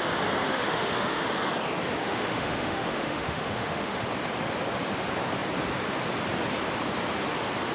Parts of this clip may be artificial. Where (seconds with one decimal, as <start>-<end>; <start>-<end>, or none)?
0.5-1.2; 2.0-4.0

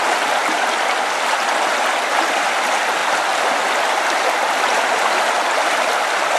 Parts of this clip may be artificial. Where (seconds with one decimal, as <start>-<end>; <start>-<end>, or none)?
none

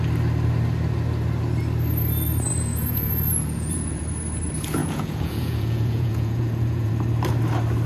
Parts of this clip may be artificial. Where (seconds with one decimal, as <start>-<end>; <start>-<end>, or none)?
2.5-4.0; 4.8-6.9

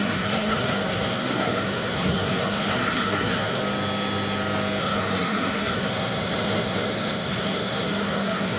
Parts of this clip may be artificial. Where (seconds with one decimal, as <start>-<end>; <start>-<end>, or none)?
0.0-3.6; 4.8-8.6

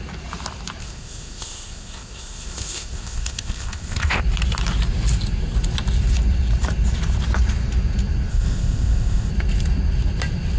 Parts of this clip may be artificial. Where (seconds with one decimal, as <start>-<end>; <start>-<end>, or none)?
0.8-4.2; 8.3-9.3

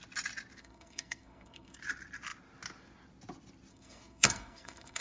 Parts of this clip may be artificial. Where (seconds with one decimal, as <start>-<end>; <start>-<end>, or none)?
0.6-1.8; 3.7-5.0